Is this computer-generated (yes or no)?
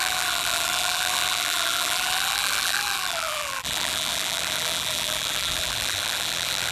yes